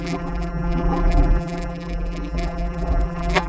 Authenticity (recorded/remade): remade